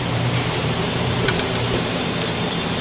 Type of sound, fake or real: fake